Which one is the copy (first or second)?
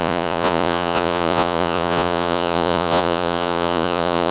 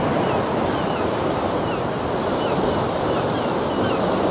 first